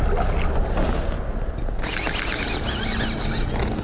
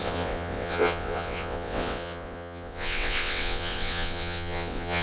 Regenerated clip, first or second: second